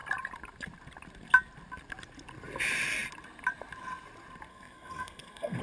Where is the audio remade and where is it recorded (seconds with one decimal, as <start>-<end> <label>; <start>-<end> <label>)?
0.0-4.5 recorded; 4.5-5.6 remade